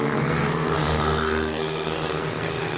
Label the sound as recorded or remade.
remade